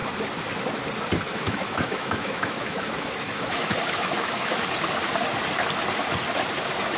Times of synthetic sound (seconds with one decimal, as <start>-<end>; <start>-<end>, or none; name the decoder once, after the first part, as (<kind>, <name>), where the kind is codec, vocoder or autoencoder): 1.3-4.6 (autoencoder, DAC-VAE)